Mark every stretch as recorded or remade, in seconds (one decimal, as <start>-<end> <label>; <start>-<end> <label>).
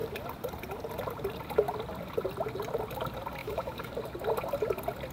0.0-3.4 recorded; 3.4-3.9 remade; 3.9-5.1 recorded